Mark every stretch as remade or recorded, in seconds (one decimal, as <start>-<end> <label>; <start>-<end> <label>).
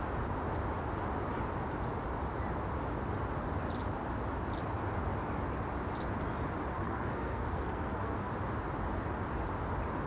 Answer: 0.0-6.7 recorded; 6.7-8.3 remade; 8.3-10.1 recorded